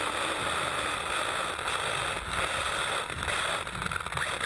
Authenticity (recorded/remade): recorded